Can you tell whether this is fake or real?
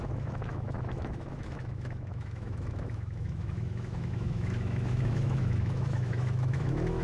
fake